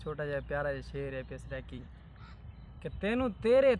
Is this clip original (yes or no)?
no